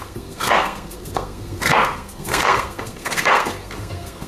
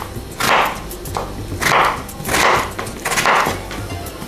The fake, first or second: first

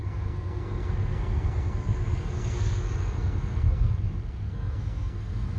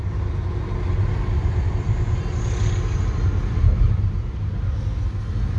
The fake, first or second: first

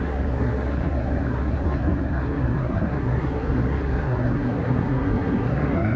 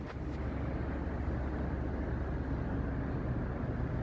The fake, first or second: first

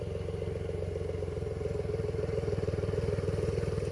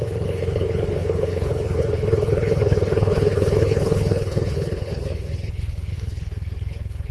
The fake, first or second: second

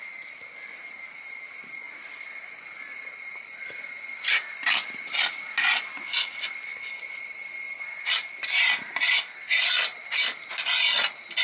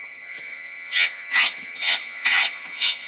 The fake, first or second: second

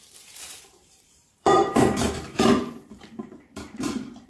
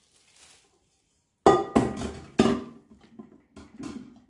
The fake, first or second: first